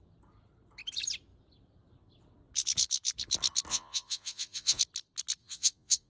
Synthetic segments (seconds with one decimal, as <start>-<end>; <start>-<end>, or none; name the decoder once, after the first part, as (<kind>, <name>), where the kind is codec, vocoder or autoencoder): 3.7-4.8 (vocoder, Vocos); 5.4-6.1